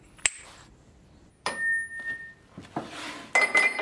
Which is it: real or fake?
real